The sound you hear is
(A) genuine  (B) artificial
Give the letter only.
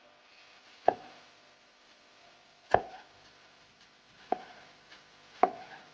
A